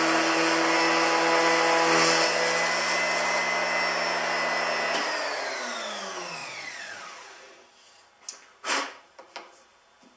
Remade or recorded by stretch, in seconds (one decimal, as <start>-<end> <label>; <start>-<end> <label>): 0.0-6.4 recorded; 6.4-7.0 remade; 7.0-10.2 recorded

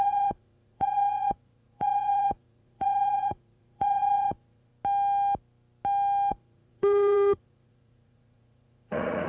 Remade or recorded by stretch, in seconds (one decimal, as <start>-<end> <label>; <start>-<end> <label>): 0.0-4.7 remade; 4.7-6.3 recorded; 6.3-9.3 remade

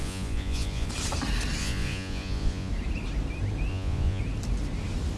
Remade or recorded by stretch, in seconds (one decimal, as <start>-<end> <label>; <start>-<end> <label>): 0.0-0.9 remade; 0.9-1.6 recorded; 1.6-2.7 remade; 2.7-3.7 recorded; 3.7-4.2 remade; 4.2-5.2 recorded